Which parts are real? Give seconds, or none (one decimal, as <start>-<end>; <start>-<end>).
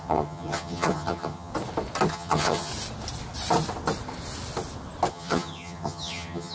1.5-2.1; 2.7-5.1